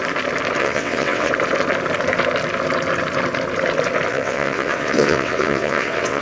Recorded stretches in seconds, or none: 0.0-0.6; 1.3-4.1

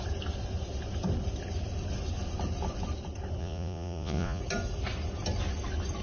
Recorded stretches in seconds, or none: 0.0-3.4; 4.4-6.0

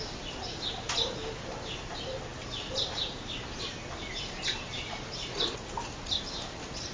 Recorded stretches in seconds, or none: 0.0-6.9

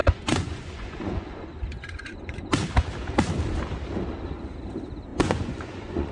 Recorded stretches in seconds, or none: 2.5-5.1

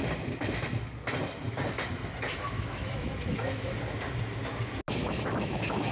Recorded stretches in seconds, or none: 0.0-2.3; 3.7-5.0

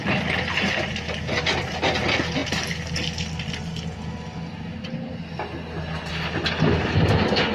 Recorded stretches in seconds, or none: 0.0-7.5

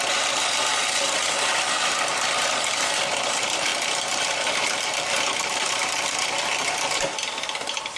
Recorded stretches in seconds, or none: 0.0-3.7; 7.0-8.0